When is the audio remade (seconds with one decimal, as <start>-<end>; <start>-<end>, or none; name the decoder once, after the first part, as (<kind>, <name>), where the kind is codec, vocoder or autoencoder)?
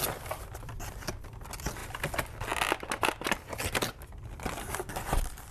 0.0-1.8 (vocoder, BigVGAN v2); 5.1-5.5